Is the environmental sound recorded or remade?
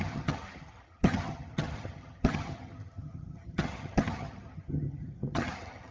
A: remade